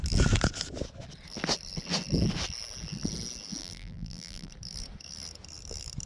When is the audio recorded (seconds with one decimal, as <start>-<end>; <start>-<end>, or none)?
0.0-3.6; 4.5-6.1